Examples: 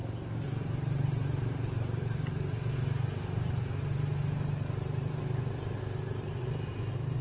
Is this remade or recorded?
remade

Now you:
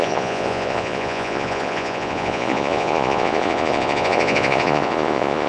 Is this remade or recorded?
remade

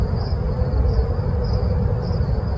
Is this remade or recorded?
recorded